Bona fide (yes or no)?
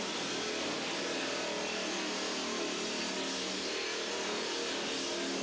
yes